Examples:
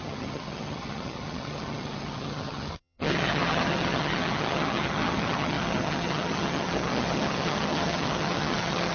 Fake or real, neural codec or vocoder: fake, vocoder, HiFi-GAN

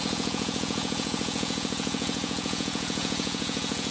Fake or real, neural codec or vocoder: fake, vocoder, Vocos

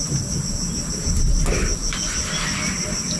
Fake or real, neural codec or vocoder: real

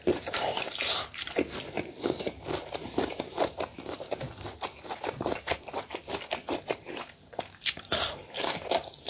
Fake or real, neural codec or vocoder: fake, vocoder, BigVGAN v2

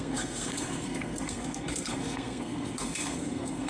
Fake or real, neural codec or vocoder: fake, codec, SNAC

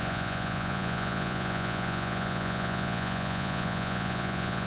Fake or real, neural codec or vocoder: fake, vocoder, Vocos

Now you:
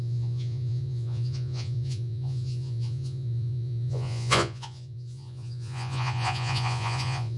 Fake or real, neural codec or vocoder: fake, vocoder, Vocos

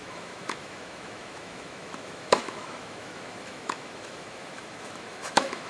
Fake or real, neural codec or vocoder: fake, autoencoder, DAC-VAE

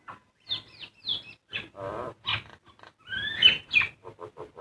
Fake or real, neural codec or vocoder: real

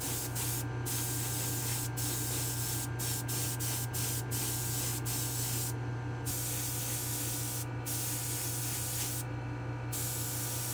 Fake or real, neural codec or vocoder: real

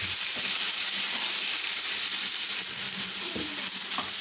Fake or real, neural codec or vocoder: fake, vocoder, BigVGAN v2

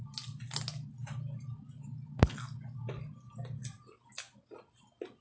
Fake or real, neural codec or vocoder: real